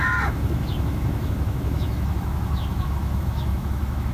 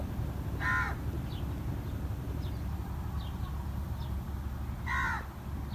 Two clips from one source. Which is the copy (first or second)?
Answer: first